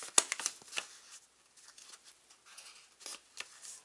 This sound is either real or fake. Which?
real